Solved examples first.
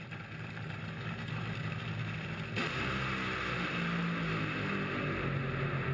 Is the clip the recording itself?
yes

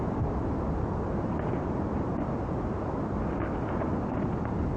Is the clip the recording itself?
yes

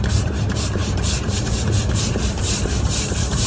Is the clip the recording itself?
no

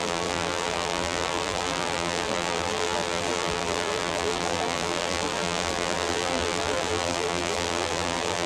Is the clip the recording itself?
no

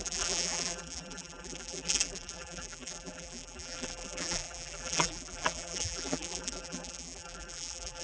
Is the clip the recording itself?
no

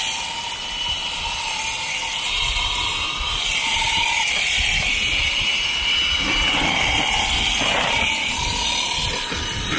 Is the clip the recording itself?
no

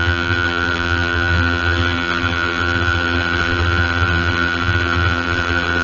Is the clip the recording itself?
no